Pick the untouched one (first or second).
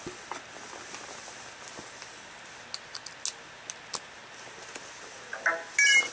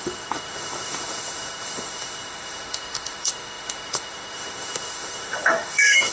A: first